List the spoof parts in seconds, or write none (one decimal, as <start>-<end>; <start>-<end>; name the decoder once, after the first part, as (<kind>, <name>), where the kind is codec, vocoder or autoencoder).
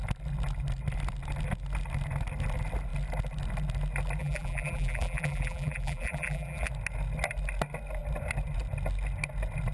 4.2-6.7 (vocoder, BigVGAN v2)